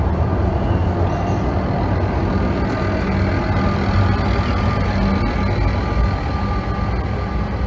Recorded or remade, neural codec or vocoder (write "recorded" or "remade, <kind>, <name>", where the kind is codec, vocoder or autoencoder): recorded